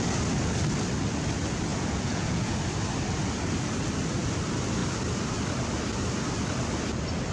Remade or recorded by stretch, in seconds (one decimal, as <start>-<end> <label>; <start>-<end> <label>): 0.0-1.7 recorded; 1.7-2.6 remade; 2.6-7.3 recorded